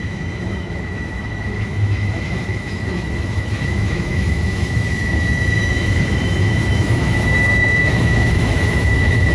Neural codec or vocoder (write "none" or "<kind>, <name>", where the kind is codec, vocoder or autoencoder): autoencoder, DAC-VAE